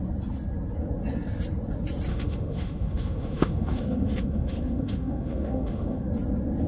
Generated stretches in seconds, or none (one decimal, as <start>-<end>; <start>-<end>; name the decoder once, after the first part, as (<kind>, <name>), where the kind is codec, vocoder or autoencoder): 2.1-6.1 (autoencoder, DAC-VAE)